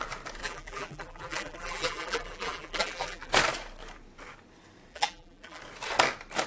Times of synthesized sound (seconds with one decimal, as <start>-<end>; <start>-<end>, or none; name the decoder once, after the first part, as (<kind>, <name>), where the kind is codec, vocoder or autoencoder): 0.4-3.3 (vocoder, BigVGAN v2); 4.9-5.6